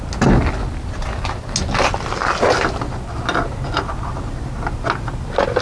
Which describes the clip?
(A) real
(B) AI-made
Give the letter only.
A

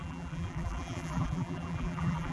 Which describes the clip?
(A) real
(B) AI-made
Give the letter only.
B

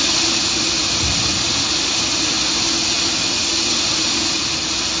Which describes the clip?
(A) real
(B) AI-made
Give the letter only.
A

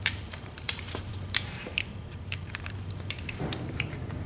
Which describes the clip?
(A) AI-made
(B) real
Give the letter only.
A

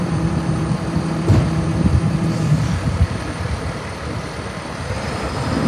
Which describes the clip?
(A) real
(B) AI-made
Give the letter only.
B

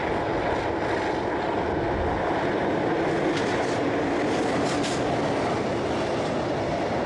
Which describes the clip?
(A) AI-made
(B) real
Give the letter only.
B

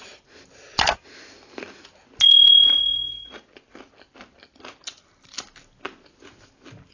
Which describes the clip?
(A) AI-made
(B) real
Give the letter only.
B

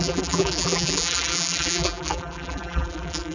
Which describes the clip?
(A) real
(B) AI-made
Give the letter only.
B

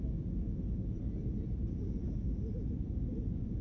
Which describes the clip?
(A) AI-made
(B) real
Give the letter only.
B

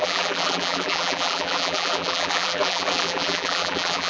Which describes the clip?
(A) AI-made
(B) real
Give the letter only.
A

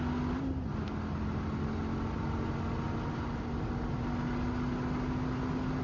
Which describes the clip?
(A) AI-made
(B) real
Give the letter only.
B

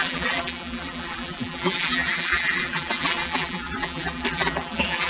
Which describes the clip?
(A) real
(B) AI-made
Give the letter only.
B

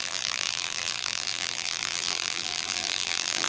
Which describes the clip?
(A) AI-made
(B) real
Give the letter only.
A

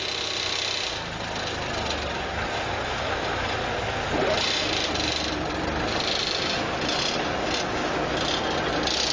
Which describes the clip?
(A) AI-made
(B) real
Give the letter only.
B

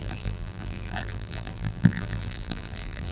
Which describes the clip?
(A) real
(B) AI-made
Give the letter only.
B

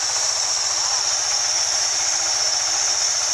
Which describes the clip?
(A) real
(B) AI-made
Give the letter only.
A